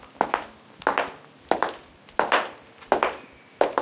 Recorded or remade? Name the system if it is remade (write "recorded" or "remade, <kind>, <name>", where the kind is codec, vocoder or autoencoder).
recorded